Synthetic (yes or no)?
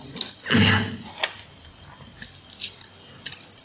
no